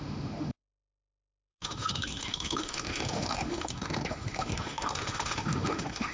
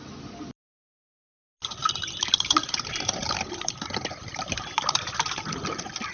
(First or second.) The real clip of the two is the second